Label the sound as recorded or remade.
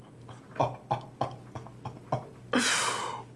recorded